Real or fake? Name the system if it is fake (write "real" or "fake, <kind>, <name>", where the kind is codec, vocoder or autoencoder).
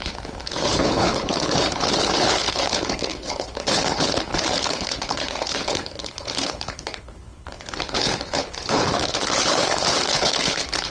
fake, codec, HILCodec